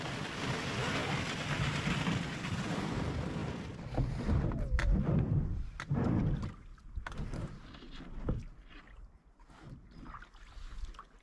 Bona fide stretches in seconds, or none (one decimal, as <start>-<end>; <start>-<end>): 0.0-1.0; 2.6-3.4; 6.2-6.7; 8.3-11.2